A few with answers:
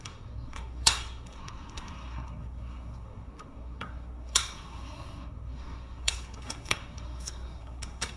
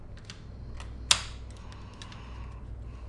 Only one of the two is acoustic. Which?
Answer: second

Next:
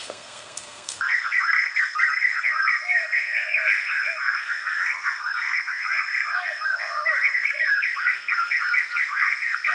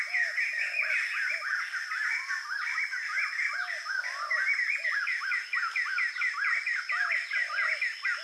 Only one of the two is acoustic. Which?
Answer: second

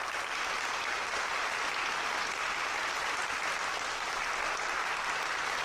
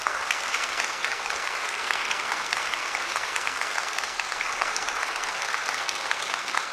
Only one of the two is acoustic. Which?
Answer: first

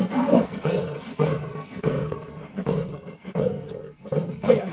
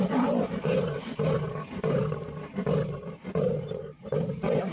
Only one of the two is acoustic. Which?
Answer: second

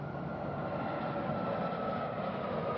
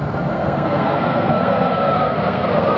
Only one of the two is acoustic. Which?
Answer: first